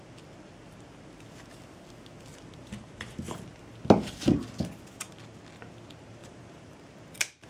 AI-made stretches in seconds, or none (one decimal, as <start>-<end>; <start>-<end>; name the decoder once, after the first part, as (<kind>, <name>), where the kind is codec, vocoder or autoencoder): 2.3-3.4 (vocoder, BigVGAN v2); 6.2-6.8